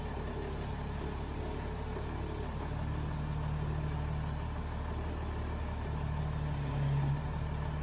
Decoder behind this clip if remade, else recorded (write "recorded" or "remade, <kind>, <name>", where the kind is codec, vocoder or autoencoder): recorded